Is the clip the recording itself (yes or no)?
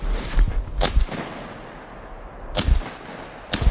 yes